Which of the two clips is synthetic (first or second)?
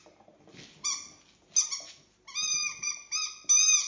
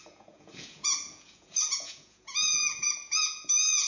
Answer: second